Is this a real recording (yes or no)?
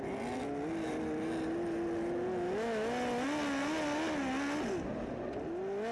yes